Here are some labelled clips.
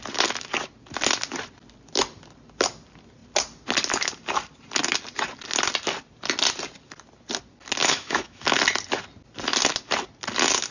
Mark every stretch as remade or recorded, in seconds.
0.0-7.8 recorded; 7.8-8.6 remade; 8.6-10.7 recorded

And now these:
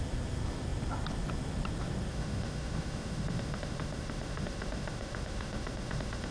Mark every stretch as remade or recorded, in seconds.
0.0-2.1 recorded; 2.1-6.3 remade

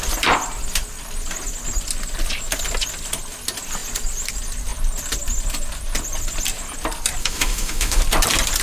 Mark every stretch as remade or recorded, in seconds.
0.0-7.2 recorded; 7.2-8.0 remade; 8.0-8.6 recorded